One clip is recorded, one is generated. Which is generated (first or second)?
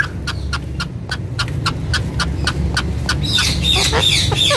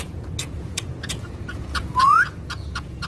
second